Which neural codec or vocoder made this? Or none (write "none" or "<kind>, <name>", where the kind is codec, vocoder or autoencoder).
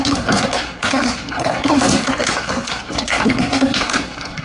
codec, SNAC